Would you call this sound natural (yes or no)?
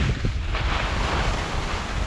yes